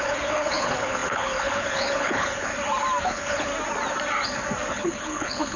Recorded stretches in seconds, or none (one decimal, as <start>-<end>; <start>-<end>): 2.5-3.0; 3.5-4.7